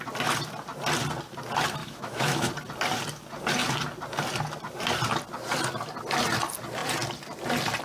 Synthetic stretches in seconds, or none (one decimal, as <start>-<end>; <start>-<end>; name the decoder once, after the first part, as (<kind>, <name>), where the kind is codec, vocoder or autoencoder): 1.8-2.5 (autoencoder, DAC-VAE)